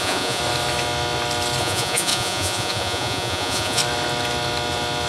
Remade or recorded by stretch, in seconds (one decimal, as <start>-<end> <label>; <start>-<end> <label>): 0.0-0.4 remade; 0.4-1.6 recorded; 1.6-3.8 remade; 3.8-5.1 recorded